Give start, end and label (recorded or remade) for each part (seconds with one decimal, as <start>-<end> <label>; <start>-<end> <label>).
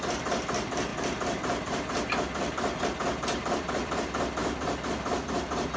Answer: 0.0-4.4 remade; 4.4-4.9 recorded; 4.9-5.8 remade